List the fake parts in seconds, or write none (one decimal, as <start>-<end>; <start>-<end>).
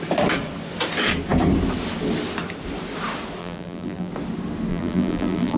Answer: 3.4-4.1; 4.7-5.6